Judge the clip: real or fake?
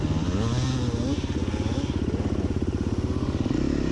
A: real